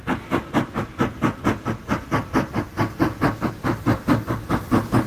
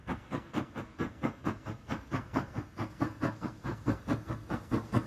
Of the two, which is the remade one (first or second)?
second